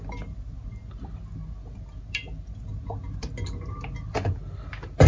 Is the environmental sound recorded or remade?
recorded